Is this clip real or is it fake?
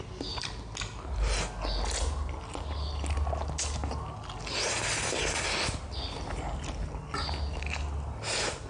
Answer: real